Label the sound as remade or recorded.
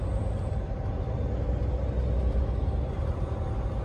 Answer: recorded